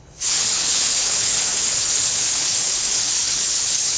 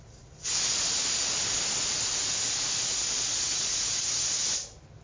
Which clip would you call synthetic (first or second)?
first